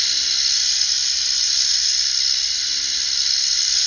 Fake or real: real